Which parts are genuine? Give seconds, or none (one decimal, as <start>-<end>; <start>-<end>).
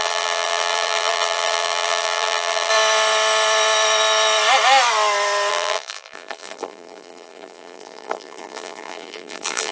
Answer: 2.7-5.5